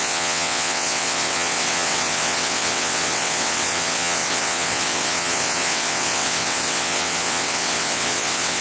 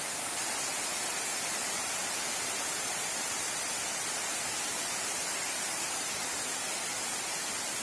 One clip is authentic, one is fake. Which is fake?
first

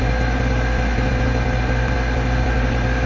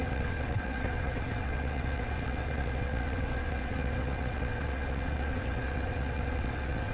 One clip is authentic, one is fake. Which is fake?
second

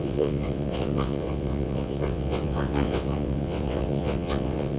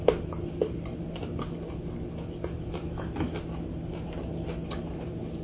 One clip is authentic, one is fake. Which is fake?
first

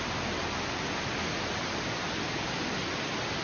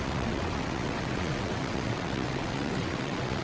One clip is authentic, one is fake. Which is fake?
second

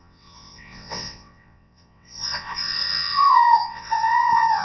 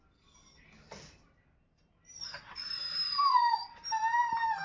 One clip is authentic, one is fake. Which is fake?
first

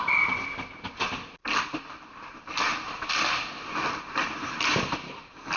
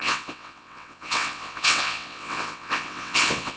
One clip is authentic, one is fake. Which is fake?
second